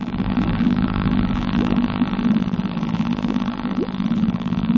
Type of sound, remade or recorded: remade